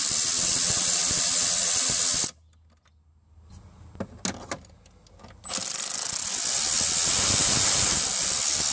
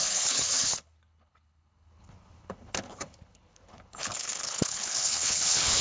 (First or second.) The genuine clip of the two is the first